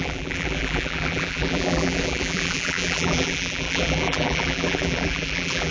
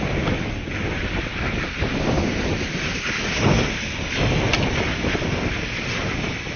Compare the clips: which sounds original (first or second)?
second